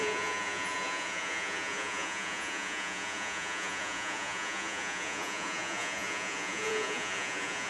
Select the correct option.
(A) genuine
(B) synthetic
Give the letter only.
B